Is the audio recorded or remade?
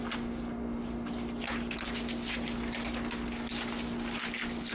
recorded